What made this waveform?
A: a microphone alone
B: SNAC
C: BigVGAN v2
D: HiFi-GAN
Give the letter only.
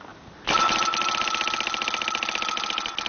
A